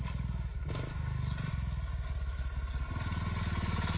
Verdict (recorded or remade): recorded